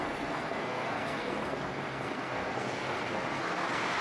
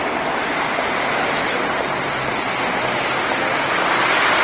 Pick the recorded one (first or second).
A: second